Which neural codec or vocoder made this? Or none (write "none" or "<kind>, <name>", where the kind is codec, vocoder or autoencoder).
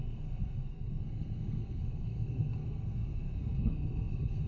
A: codec, SNAC